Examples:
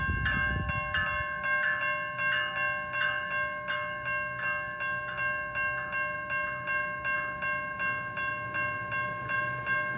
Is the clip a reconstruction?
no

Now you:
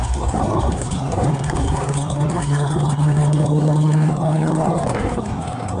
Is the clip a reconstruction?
yes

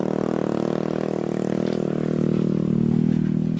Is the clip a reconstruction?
no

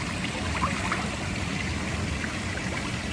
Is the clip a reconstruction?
no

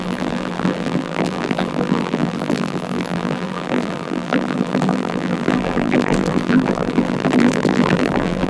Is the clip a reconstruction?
yes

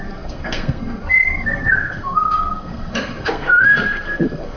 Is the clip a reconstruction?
yes